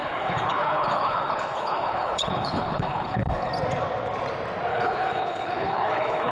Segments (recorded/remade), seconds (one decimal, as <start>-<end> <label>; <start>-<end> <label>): 0.0-3.5 remade; 3.5-4.7 recorded; 4.7-6.3 remade